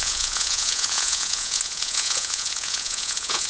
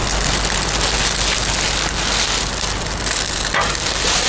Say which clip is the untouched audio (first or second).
second